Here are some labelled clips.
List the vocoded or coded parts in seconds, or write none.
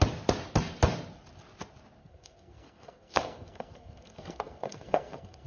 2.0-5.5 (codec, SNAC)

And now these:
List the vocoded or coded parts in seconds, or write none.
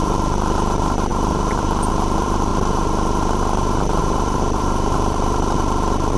0.0-2.5 (vocoder, BigVGAN v2); 4.0-6.2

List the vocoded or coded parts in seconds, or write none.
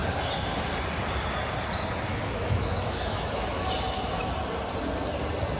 2.1-3.7 (autoencoder, DAC-VAE)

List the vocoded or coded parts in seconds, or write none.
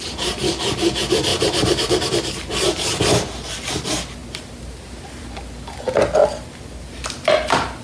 1.3-3.0 (vocoder, BigVGAN v2)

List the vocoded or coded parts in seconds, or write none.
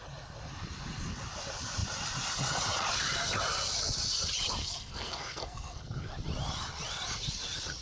4.6-6.1 (codec, SNAC)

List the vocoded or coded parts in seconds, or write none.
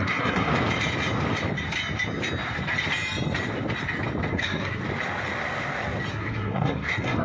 0.0-0.5 (codec, SNAC); 4.3-4.8; 6.1-7.2